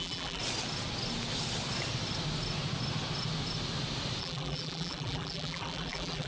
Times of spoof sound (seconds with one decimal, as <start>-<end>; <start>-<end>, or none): 0.0-0.4; 4.2-6.3